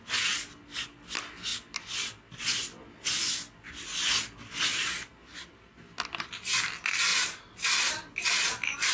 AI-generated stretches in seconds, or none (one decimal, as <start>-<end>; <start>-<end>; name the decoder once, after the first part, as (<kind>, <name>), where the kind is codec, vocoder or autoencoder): 4.7-5.8 (vocoder, BigVGAN v2)